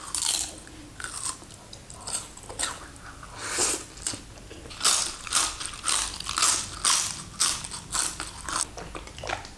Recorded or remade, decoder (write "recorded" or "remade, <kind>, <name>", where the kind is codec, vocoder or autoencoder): recorded